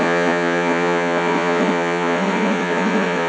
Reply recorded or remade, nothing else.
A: remade